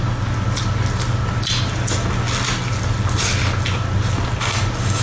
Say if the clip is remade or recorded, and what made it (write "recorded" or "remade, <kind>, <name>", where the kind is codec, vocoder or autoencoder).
recorded